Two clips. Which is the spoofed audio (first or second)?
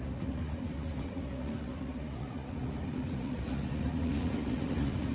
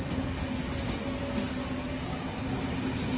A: first